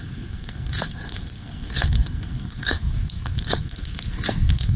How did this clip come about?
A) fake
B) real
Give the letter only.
A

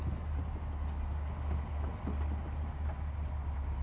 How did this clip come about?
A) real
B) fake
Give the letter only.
A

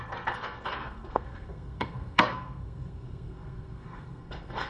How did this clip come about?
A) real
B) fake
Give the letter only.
B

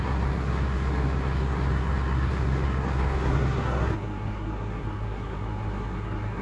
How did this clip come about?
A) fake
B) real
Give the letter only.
A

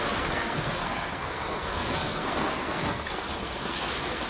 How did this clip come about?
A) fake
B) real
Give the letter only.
A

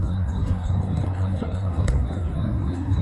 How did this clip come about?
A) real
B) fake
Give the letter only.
B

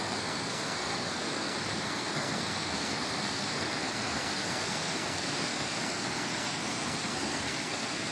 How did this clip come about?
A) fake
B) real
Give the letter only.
A